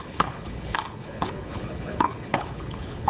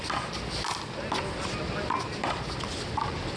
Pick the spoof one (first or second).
first